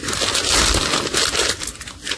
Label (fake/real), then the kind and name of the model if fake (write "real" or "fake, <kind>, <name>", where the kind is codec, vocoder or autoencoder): real